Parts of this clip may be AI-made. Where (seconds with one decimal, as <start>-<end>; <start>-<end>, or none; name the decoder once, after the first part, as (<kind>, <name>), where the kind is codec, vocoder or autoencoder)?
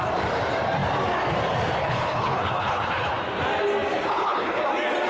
1.8-3.1 (codec, HILCodec); 4.0-4.6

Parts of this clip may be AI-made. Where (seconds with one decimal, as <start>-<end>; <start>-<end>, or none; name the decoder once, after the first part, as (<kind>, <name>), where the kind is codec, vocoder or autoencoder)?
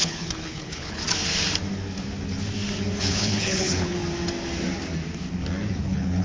0.0-1.0 (codec, HILCodec); 3.0-4.0; 5.8-6.2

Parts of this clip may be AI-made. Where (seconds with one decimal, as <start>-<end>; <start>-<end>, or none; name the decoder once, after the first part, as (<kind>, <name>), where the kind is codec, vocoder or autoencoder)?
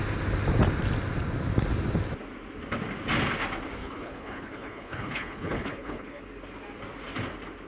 3.8-6.2 (codec, HILCodec)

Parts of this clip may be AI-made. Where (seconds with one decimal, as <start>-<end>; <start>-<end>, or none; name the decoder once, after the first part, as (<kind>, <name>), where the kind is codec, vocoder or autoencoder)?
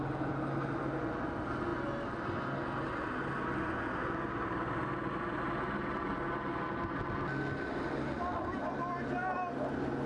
none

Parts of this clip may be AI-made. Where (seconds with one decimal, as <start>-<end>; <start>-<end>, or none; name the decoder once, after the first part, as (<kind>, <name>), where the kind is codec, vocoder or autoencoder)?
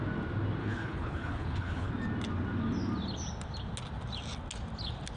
0.6-1.9 (codec, HILCodec)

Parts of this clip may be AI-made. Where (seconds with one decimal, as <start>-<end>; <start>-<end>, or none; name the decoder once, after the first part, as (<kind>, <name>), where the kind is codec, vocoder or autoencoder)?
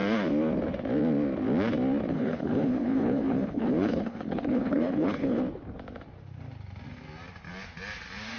2.1-5.4 (codec, HILCodec)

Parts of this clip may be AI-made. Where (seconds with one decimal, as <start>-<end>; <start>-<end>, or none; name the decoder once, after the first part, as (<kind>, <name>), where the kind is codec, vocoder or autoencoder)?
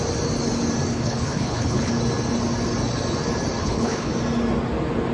0.9-1.9 (codec, HILCodec); 3.6-4.1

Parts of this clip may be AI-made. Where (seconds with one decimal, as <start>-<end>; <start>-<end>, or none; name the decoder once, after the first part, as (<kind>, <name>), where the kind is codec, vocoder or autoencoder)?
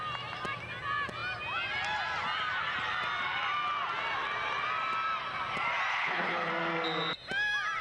5.9-6.5 (codec, HILCodec)